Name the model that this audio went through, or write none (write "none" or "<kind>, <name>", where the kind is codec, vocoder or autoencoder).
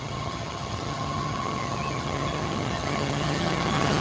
vocoder, HiFi-GAN